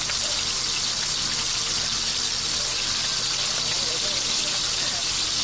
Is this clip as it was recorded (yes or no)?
yes